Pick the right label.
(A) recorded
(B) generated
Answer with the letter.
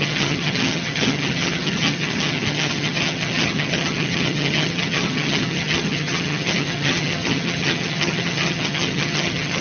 B